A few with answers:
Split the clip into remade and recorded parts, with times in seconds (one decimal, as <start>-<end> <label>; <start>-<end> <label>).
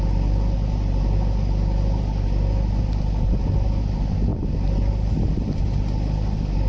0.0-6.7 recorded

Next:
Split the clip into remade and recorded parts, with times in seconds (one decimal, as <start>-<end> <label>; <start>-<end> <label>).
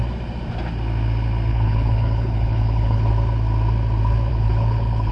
0.0-1.5 recorded; 1.5-3.1 remade; 3.1-4.3 recorded; 4.3-5.1 remade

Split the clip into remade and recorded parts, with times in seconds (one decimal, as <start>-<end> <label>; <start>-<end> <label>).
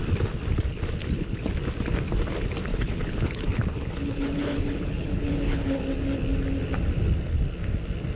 0.0-1.0 recorded; 1.0-1.5 remade; 1.5-2.7 recorded; 2.7-5.8 remade; 5.8-8.2 recorded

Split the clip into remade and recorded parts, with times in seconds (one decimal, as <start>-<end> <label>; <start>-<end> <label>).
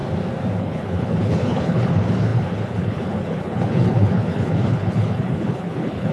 0.0-0.6 recorded; 0.6-6.1 remade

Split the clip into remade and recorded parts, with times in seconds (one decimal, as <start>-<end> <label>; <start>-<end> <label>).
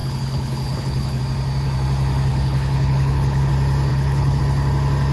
0.0-1.2 remade; 1.2-2.3 recorded; 2.3-3.5 remade; 3.5-3.9 recorded; 3.9-4.4 remade; 4.4-5.1 recorded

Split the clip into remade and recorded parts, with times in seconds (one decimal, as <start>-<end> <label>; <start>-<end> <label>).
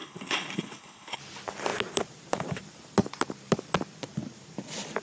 0.0-1.2 remade; 1.2-5.0 recorded